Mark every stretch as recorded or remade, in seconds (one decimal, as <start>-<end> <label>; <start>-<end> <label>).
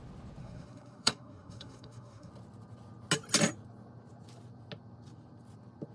0.0-0.4 recorded; 0.4-2.3 remade; 2.3-5.9 recorded